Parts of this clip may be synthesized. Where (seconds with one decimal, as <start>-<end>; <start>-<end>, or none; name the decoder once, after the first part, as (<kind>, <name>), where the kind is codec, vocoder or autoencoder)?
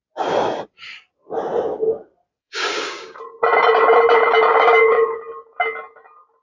2.4-3.2 (codec, DAC); 4.5-5.1